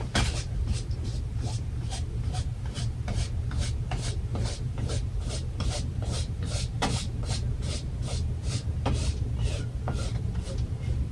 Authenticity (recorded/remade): remade